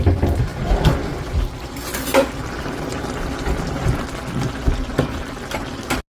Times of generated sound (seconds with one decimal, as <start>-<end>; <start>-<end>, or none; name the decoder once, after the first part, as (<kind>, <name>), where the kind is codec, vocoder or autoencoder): none